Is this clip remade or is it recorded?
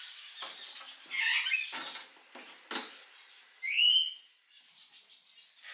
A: recorded